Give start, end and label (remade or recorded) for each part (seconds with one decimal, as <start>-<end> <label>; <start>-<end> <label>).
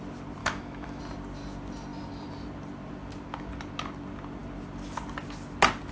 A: 0.0-0.4 recorded; 0.4-1.0 remade; 1.0-5.9 recorded